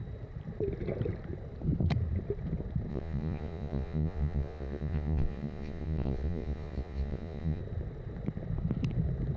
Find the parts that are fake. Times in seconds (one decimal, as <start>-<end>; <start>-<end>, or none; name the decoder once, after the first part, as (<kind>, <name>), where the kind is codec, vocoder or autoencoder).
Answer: 2.9-7.6 (vocoder, Vocos)